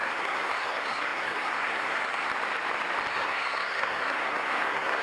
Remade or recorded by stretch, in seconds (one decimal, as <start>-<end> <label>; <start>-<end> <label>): 0.0-2.3 remade; 2.3-3.1 recorded; 3.1-5.0 remade